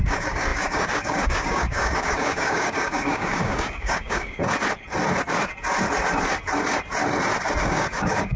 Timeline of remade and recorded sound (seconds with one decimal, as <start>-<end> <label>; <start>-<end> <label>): 0.0-4.4 remade; 4.4-7.6 recorded; 7.6-8.4 remade